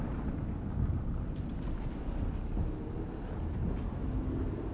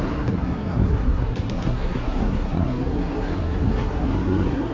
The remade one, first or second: second